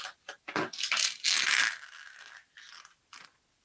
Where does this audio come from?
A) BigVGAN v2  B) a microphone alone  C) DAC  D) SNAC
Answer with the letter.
B